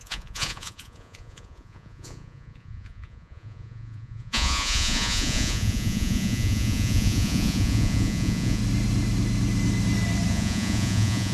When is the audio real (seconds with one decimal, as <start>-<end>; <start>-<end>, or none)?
8.6-10.3